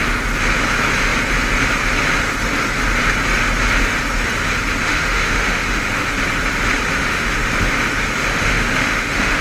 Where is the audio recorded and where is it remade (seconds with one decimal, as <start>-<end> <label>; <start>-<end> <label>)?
0.0-4.8 recorded; 4.8-6.1 remade; 6.1-7.0 recorded; 7.0-7.5 remade; 7.5-8.2 recorded; 8.2-9.4 remade